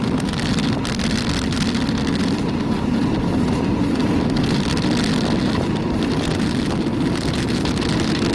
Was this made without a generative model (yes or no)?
yes